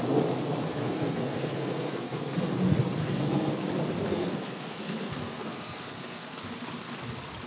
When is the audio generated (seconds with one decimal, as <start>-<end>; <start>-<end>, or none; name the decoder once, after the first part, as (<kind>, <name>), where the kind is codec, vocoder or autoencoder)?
0.7-2.5 (codec, SNAC); 3.0-3.5; 4.1-6.4